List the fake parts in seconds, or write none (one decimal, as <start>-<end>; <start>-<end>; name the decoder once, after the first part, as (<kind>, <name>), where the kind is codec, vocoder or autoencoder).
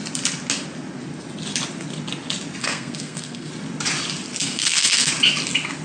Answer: 2.6-3.5 (codec, SNAC); 4.4-5.1